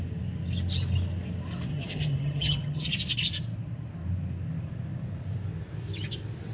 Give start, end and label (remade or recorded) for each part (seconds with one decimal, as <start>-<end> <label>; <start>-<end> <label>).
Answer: 0.0-1.7 recorded; 1.7-2.9 remade; 2.9-6.5 recorded